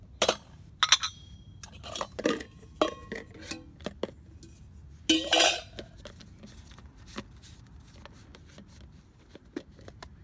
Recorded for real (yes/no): yes